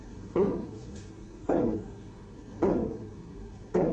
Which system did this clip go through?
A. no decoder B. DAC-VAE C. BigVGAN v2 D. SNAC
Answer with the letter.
D